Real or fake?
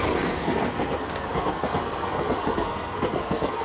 fake